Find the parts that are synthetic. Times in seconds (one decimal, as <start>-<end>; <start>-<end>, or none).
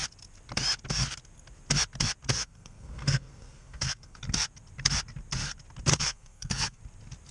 2.3-4.2; 5.9-6.8